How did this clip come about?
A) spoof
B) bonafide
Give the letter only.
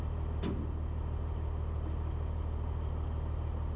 B